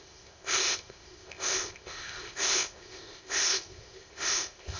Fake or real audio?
fake